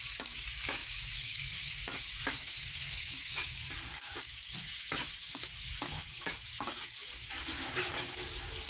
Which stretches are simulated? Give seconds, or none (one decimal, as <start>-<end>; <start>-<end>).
0.0-8.7